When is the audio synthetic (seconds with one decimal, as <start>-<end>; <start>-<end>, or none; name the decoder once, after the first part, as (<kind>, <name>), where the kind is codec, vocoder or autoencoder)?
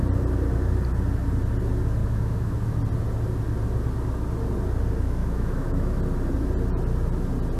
2.0-2.8 (autoencoder, DAC-VAE); 5.2-6.0